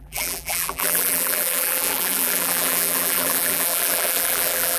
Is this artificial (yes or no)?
yes